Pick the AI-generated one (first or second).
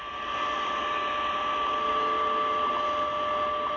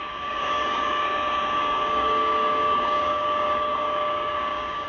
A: second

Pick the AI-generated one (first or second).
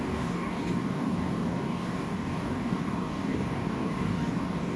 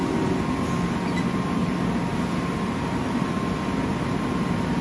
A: first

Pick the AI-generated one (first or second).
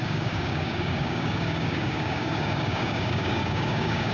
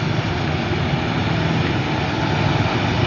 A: first